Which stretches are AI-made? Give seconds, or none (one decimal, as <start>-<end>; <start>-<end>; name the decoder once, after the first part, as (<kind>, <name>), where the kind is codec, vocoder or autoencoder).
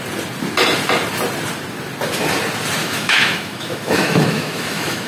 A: 2.8-5.1 (autoencoder, DAC-VAE)